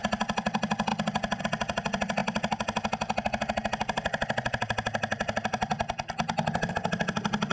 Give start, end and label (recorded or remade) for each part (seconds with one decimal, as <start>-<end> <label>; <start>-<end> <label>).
0.0-7.5 recorded